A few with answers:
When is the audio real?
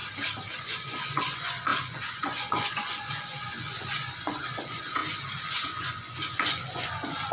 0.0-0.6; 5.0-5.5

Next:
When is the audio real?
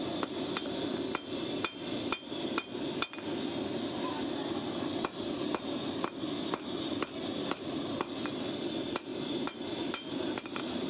0.0-9.1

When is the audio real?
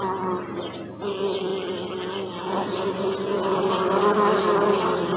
0.0-5.2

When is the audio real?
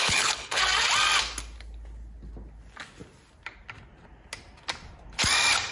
0.6-5.7